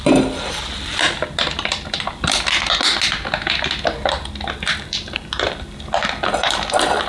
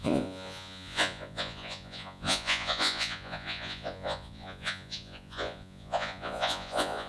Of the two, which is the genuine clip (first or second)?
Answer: first